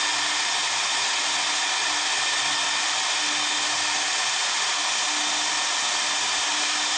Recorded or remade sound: recorded